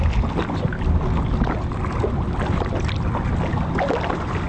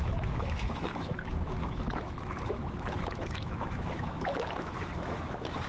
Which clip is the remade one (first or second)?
second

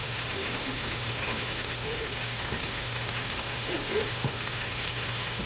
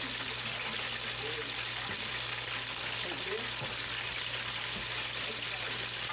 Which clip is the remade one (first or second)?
first